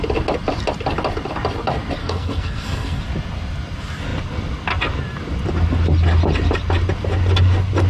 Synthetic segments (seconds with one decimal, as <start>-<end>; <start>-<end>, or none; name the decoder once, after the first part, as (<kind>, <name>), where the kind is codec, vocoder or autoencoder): 2.0-3.0 (codec, SNAC)